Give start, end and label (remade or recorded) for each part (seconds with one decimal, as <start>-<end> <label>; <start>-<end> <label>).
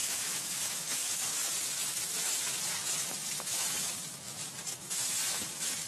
0.0-1.5 remade; 1.5-2.1 recorded; 2.1-5.9 remade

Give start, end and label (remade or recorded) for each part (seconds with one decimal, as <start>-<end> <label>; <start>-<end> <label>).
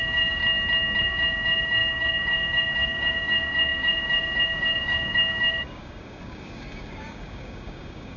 0.0-0.4 remade; 0.4-1.0 recorded; 1.0-8.2 remade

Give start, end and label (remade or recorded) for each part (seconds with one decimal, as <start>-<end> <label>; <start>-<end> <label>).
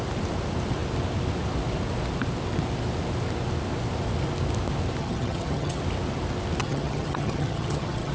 0.0-5.0 recorded; 5.0-5.8 remade; 5.8-6.6 recorded; 6.6-8.1 remade